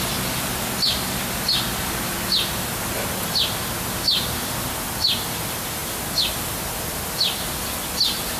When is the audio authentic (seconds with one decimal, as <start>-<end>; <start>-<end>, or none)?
0.0-8.4